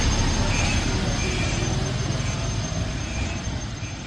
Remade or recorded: recorded